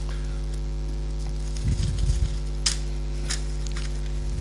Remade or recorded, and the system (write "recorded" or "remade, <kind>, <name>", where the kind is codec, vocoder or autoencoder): recorded